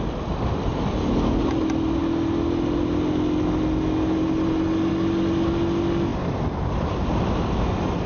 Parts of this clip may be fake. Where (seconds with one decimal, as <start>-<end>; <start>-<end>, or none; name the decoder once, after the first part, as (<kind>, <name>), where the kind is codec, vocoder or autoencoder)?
none

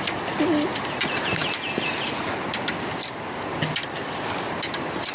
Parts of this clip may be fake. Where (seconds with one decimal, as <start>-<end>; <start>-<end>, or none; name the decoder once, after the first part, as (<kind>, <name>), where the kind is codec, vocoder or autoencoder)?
none